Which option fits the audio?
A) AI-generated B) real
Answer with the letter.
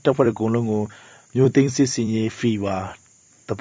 A